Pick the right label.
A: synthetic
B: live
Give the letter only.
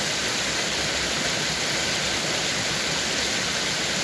B